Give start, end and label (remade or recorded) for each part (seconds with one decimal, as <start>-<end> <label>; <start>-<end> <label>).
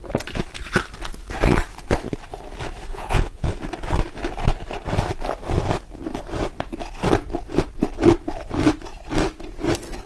0.0-2.9 recorded; 2.9-3.5 remade; 3.5-10.1 recorded